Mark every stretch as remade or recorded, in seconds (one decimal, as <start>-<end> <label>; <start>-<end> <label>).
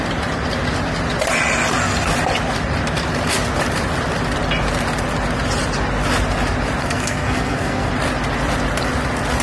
0.0-6.8 recorded; 6.8-7.9 remade; 7.9-9.4 recorded